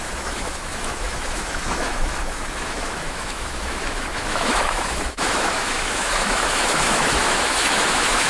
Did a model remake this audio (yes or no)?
yes